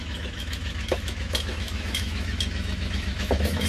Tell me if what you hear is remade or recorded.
remade